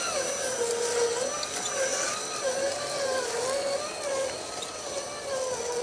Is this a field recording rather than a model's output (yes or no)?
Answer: yes